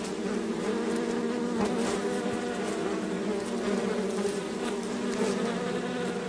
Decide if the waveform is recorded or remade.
recorded